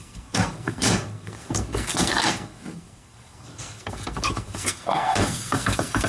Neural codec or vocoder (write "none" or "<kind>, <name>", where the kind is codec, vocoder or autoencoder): codec, SNAC